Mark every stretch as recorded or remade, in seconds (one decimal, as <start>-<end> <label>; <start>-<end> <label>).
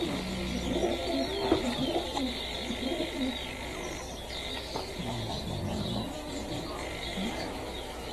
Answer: 0.0-7.1 recorded; 7.1-8.1 remade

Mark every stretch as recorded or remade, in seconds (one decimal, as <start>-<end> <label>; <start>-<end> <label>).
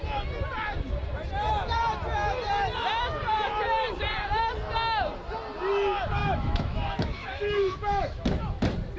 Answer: 0.0-6.2 recorded; 6.2-8.6 remade; 8.6-9.0 recorded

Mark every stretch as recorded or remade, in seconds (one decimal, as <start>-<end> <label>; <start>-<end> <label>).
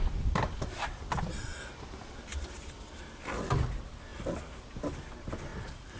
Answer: 0.0-6.0 recorded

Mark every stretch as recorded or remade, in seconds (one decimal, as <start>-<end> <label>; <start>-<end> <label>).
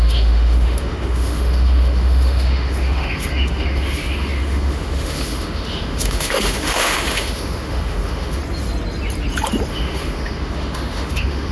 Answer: 0.0-8.4 remade; 8.4-9.7 recorded; 9.7-11.5 remade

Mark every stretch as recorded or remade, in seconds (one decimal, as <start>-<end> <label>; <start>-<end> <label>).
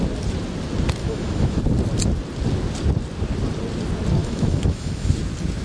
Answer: 0.0-1.0 recorded; 1.0-1.6 remade; 1.6-4.2 recorded; 4.2-5.1 remade; 5.1-5.6 recorded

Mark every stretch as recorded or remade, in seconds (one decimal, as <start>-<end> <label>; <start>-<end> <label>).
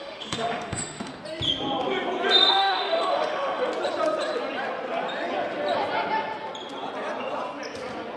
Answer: 0.0-1.1 remade; 1.1-2.5 recorded; 2.5-3.7 remade; 3.7-8.2 recorded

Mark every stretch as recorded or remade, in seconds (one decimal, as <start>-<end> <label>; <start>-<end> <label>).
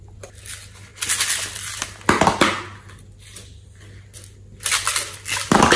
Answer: 0.0-5.8 recorded